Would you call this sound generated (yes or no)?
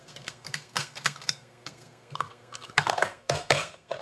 yes